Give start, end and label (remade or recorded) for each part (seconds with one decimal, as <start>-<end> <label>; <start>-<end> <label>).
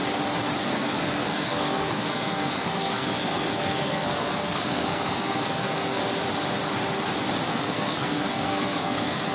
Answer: 0.0-0.6 recorded; 0.6-6.0 remade; 6.0-7.5 recorded; 7.5-9.3 remade